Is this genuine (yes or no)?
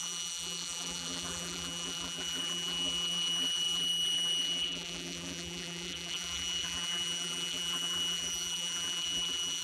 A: no